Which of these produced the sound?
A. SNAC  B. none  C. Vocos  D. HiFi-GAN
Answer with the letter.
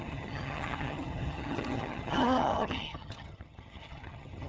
D